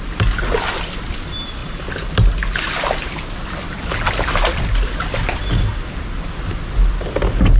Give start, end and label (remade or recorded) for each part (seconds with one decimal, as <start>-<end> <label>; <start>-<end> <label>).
0.0-7.6 recorded

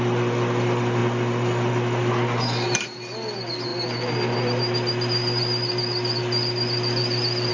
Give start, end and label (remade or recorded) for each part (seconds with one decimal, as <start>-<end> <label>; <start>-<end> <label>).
0.0-7.5 recorded

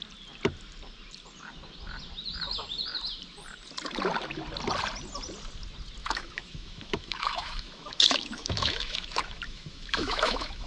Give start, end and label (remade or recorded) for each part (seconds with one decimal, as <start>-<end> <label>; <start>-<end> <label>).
0.0-6.0 recorded; 6.0-10.7 remade

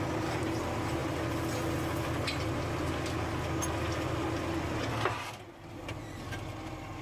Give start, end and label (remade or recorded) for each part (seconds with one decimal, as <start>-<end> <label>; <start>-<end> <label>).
0.0-7.0 recorded

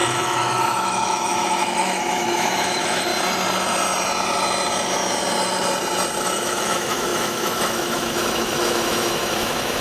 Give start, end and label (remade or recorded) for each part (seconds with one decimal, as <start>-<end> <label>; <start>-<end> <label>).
0.0-3.1 remade; 3.1-6.2 recorded; 6.2-9.8 remade

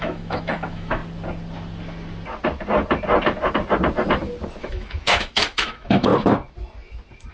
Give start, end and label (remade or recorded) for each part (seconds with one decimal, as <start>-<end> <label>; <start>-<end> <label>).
0.0-1.0 remade; 1.0-4.6 recorded; 4.6-6.1 remade; 6.1-7.3 recorded